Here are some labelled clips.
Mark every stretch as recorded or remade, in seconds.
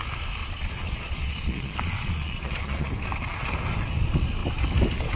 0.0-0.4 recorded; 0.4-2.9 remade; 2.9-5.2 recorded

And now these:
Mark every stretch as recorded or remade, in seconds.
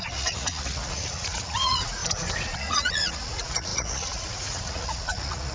0.0-2.0 remade; 2.0-2.5 recorded; 2.5-5.5 remade